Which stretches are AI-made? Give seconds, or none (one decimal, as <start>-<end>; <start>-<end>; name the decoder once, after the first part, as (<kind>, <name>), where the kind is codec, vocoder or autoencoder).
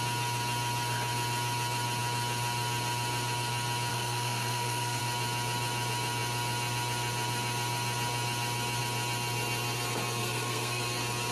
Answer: 3.9-5.0 (codec, SNAC); 10.2-10.8